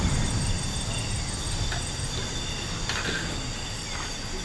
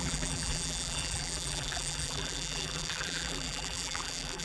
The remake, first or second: second